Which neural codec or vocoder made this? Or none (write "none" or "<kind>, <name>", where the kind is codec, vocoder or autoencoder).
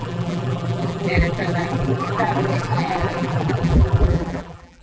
vocoder, BigVGAN v2